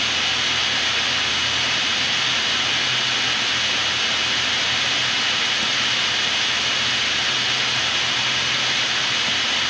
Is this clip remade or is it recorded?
recorded